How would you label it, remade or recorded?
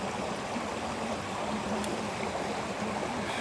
recorded